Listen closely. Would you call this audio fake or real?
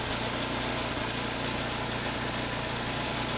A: real